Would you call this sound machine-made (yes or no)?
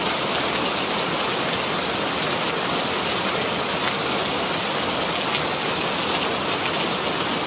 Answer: no